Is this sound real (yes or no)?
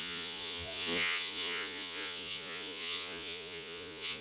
no